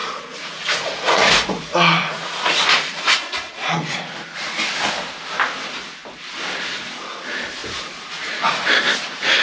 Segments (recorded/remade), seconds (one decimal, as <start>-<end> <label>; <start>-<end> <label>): 0.0-4.1 remade; 4.1-7.6 recorded; 7.6-8.6 remade; 8.6-9.4 recorded